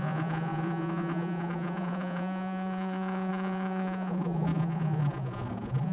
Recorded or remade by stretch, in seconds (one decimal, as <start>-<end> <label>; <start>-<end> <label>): 0.0-5.9 remade